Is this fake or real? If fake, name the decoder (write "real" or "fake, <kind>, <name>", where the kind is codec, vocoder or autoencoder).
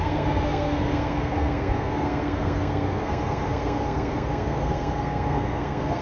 fake, codec, SNAC